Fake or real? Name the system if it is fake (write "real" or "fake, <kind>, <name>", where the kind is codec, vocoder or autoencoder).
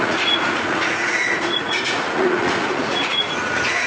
fake, vocoder, Vocos